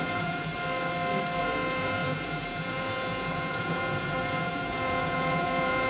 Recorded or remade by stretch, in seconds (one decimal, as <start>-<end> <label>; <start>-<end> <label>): 0.0-0.5 remade; 0.5-1.4 recorded; 1.4-5.9 remade